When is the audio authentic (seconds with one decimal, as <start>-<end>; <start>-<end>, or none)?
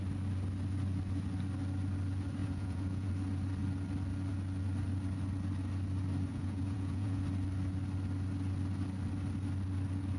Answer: 0.0-2.4; 3.1-6.3; 7.2-10.2